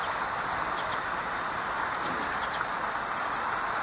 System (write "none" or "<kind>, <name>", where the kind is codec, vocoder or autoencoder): none